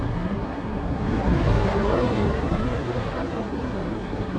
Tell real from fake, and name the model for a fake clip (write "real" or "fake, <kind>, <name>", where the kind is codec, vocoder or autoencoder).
fake, codec, SNAC